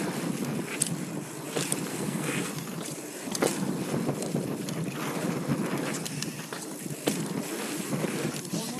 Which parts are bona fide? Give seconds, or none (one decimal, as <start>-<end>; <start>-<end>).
0.0-1.9; 2.5-8.8